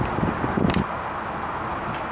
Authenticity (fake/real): real